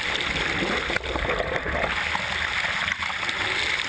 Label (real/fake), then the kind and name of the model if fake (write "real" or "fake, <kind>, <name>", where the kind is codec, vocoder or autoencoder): real